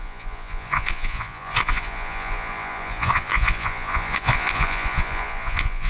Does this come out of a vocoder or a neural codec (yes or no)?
yes